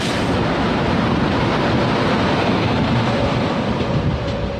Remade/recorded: remade